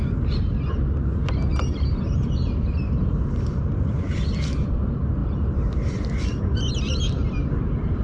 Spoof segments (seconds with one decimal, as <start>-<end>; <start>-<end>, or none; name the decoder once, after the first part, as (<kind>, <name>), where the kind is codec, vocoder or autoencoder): 1.5-4.1 (vocoder, BigVGAN v2)

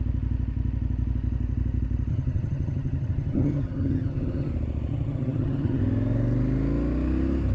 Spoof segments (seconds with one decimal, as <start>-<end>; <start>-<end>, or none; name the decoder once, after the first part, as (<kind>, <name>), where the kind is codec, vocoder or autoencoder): 2.1-4.5 (vocoder, HiFi-GAN); 4.9-5.8

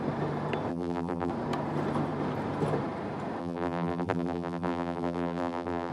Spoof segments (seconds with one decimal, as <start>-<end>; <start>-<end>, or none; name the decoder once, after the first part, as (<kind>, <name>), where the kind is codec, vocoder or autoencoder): 0.7-1.3 (vocoder, BigVGAN v2); 3.4-5.9

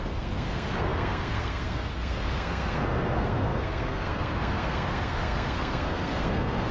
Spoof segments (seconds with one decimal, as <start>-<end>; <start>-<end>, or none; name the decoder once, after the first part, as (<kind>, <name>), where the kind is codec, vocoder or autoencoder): 0.0-6.7 (codec, SNAC)

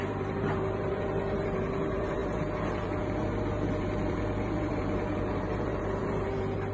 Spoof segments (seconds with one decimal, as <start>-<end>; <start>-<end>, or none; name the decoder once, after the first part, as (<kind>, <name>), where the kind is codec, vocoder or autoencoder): 0.0-6.7 (vocoder, BigVGAN v2)

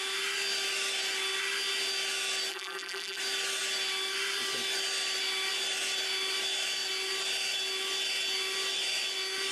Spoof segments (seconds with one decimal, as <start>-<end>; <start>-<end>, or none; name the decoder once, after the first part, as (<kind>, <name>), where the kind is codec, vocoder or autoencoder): 2.5-3.2 (vocoder, BigVGAN v2)

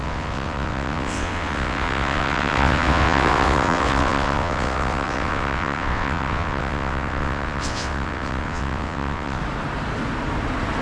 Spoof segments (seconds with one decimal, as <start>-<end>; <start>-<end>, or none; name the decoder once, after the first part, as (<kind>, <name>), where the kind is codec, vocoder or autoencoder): 0.0-9.4 (vocoder, WaveNeXt)

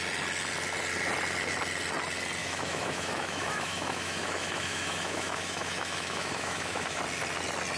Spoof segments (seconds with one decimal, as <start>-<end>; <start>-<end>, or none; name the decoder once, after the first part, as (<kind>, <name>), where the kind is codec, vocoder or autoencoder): 2.4-7.0 (autoencoder, DAC-VAE)